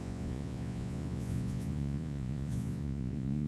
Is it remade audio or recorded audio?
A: remade